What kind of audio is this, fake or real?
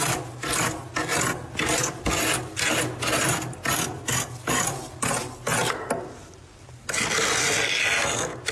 real